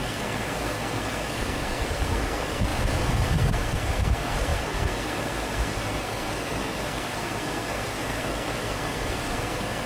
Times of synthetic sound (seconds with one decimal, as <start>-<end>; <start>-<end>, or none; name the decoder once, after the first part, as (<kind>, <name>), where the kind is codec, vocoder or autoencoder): 0.0-9.9 (codec, SNAC)